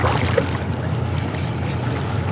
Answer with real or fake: real